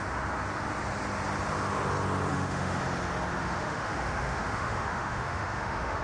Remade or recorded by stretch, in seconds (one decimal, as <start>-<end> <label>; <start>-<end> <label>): 0.0-2.3 recorded; 2.3-2.8 remade; 2.8-3.4 recorded; 3.4-6.0 remade